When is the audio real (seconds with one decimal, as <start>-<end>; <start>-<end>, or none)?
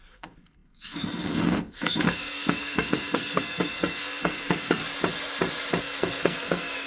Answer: 4.8-5.8